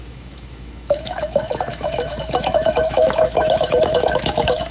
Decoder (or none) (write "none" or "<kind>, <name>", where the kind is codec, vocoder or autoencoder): autoencoder, DAC-VAE